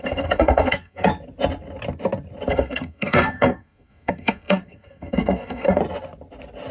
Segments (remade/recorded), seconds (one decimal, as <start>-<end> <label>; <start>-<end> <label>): 0.0-1.1 remade; 1.1-2.5 recorded; 2.5-5.8 remade; 5.8-6.7 recorded